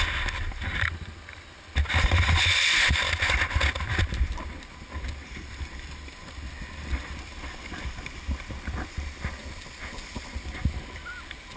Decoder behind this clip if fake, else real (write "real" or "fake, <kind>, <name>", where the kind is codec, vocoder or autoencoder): real